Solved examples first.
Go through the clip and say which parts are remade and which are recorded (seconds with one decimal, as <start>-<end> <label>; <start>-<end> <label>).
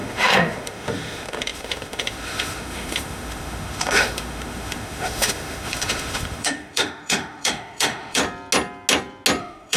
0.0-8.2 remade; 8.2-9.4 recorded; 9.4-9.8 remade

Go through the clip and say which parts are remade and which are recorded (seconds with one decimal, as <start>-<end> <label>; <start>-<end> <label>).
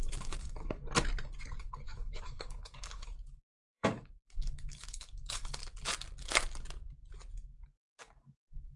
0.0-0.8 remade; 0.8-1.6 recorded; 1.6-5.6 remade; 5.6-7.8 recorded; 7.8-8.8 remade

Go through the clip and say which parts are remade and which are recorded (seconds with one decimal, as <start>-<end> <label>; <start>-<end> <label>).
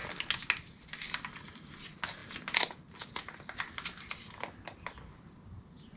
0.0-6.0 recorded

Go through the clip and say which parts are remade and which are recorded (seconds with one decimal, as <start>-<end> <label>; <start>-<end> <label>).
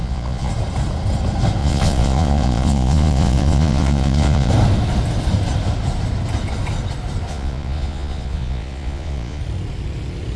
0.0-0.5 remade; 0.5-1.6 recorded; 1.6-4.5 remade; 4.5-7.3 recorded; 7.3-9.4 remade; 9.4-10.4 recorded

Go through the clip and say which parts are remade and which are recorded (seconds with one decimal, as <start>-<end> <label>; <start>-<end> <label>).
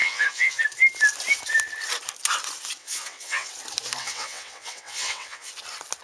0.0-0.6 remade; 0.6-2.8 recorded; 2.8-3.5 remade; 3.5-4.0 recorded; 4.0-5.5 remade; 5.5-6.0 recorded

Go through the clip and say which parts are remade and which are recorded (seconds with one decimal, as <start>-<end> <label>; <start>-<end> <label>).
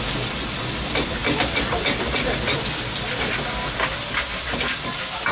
0.0-5.3 recorded